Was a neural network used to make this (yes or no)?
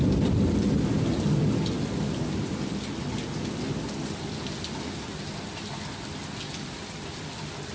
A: no